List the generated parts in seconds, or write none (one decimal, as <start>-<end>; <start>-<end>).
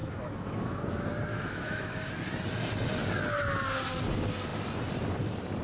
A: 0.0-0.8; 1.3-2.1